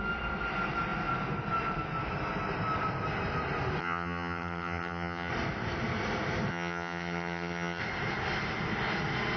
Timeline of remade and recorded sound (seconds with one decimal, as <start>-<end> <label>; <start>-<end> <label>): 0.0-3.8 recorded; 3.8-5.3 remade; 5.3-6.5 recorded; 6.5-7.8 remade; 7.8-9.4 recorded